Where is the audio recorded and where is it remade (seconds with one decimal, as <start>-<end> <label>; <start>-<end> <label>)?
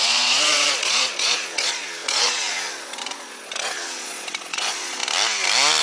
0.0-5.0 remade; 5.0-5.8 recorded